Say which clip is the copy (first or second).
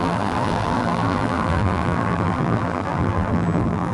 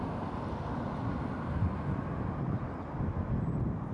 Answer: first